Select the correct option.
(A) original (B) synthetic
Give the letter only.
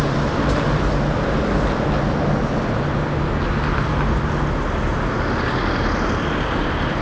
A